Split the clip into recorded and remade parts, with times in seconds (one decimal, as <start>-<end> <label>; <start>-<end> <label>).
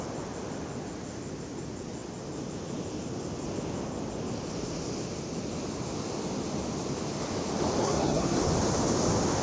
0.0-7.8 recorded; 7.8-8.5 remade; 8.5-9.4 recorded